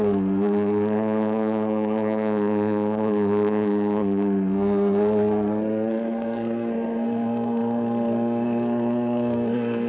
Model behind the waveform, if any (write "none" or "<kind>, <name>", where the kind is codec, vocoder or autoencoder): codec, SNAC